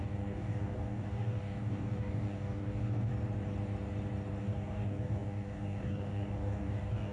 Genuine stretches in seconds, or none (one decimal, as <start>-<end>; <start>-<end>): 3.1-4.4